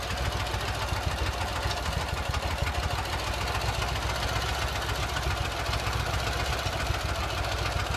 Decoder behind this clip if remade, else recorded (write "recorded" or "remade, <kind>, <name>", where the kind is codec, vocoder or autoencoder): recorded